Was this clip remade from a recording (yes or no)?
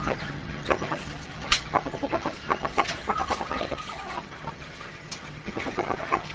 yes